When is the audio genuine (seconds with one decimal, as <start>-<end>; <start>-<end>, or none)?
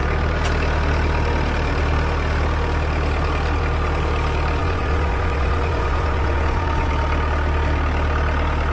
0.0-4.6; 6.9-8.7